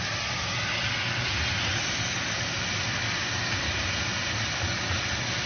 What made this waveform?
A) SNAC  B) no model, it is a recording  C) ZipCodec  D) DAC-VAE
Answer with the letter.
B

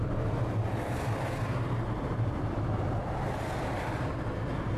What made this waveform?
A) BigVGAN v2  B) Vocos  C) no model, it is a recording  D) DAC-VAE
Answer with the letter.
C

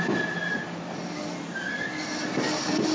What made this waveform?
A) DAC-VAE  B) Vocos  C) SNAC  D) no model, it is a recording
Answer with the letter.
D